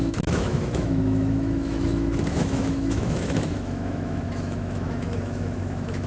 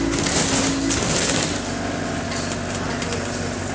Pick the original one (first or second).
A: second